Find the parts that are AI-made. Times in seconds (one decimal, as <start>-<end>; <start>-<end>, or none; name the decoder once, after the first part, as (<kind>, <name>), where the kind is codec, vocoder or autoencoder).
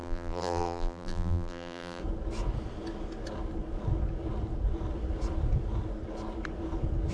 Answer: 0.0-2.0 (vocoder, BigVGAN v2)